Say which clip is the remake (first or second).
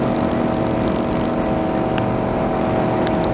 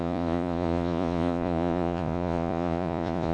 second